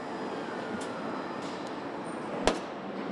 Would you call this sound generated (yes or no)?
no